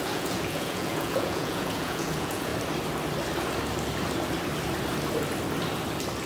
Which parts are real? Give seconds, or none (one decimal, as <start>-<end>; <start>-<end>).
2.5-6.3